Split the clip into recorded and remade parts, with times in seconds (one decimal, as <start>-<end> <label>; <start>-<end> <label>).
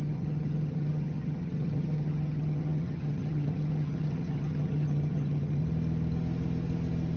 0.0-5.6 remade; 5.6-7.2 recorded